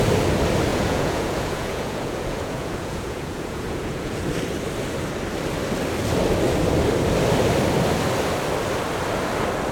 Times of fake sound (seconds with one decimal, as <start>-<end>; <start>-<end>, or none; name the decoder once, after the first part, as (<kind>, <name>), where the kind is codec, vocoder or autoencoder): 0.7-4.3 (vocoder, Vocos)